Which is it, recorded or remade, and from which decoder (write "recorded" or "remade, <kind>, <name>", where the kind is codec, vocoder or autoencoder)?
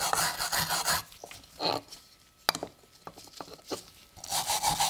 recorded